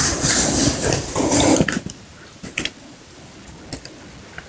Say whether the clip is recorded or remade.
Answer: recorded